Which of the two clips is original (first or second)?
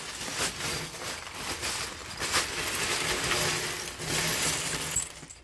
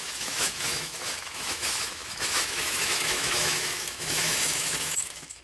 first